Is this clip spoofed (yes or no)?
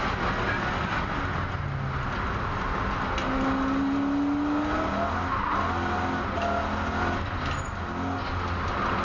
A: no